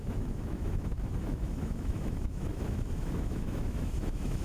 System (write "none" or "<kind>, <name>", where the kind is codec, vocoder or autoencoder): autoencoder, DAC-VAE